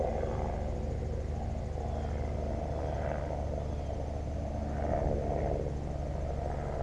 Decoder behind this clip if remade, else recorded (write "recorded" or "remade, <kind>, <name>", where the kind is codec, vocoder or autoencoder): recorded